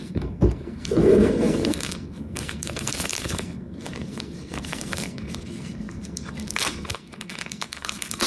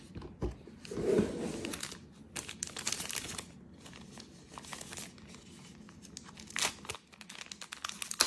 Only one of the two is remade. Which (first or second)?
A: first